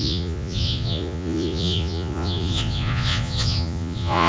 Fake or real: fake